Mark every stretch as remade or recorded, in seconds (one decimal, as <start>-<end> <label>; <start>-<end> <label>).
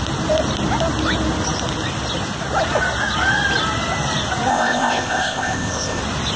0.0-4.5 recorded; 4.5-6.0 remade; 6.0-6.4 recorded